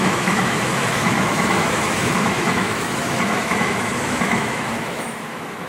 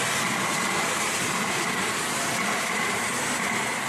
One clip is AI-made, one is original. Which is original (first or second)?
second